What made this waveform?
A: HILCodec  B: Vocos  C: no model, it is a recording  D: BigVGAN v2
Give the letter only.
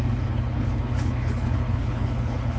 A